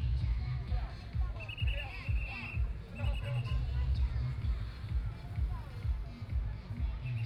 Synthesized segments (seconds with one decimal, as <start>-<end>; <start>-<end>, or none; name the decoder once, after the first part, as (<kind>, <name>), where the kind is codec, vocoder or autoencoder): 0.0-0.7 (autoencoder, DAC-VAE)